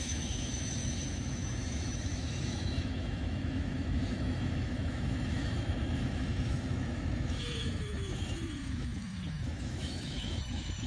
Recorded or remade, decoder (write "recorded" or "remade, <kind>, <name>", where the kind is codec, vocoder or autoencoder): remade, autoencoder, DAC-VAE